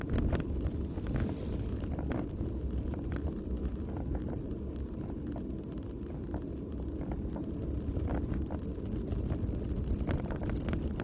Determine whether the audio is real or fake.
real